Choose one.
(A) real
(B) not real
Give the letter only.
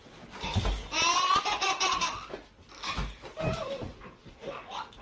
A